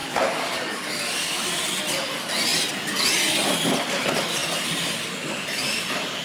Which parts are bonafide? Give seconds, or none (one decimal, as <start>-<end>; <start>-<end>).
0.0-6.2